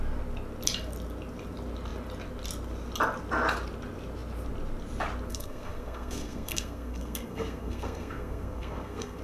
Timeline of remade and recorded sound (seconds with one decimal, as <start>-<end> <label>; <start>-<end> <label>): 0.0-5.3 recorded; 5.3-9.2 remade